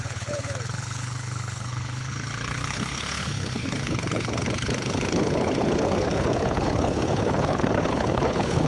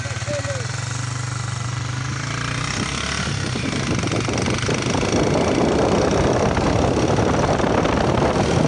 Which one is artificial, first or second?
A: first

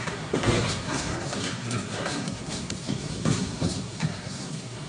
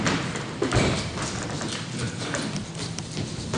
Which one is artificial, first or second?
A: first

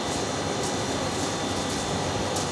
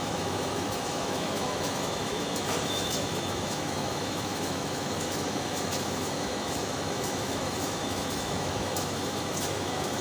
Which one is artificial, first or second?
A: second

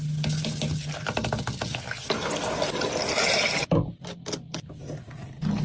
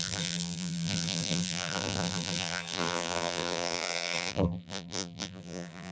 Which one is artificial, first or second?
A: second